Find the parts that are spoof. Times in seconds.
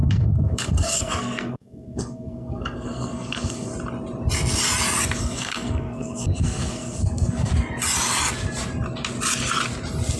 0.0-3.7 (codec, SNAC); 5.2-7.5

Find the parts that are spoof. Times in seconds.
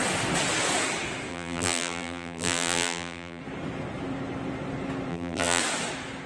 1.3-3.4 (vocoder, BigVGAN v2); 5.1-5.6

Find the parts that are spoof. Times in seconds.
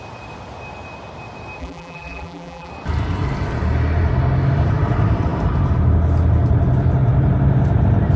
1.6-2.7 (vocoder, BigVGAN v2)